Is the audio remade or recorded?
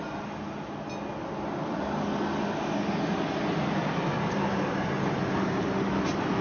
recorded